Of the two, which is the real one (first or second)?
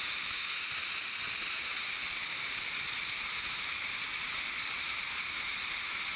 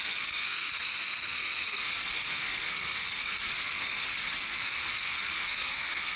first